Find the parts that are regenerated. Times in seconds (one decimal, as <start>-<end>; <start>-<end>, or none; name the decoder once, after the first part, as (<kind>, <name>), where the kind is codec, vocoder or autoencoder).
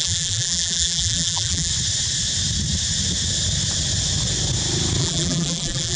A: 0.0-1.7 (vocoder, BigVGAN v2); 5.0-6.0